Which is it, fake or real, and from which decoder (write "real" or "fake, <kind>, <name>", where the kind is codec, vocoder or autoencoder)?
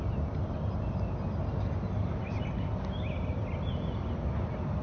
real